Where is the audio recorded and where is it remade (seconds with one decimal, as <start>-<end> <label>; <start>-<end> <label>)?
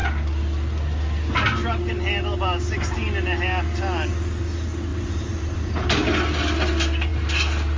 0.0-4.9 recorded; 4.9-5.9 remade; 5.9-7.8 recorded